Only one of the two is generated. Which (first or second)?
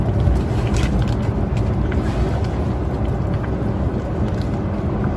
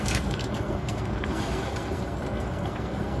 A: second